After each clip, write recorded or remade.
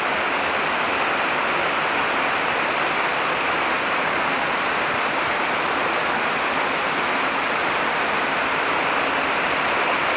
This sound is recorded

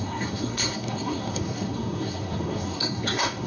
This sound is remade